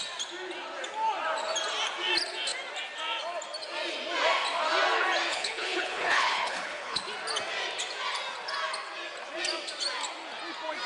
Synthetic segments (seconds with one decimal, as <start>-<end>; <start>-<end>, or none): 5.3-7.0